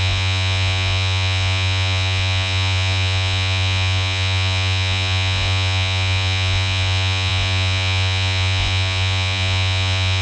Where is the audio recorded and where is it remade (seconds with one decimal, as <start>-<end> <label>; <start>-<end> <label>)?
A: 0.0-10.2 remade

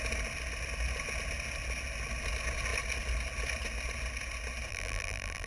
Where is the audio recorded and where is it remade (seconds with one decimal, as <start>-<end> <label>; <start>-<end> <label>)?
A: 0.0-4.7 recorded; 4.7-5.5 remade

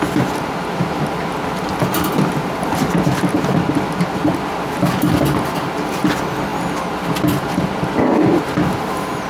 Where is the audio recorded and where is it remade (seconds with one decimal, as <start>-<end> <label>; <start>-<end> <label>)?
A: 0.0-9.3 recorded

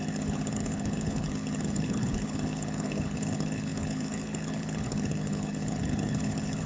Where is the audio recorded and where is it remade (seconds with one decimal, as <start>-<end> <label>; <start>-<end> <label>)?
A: 0.0-6.7 remade